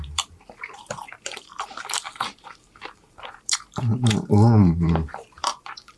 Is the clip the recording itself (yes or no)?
no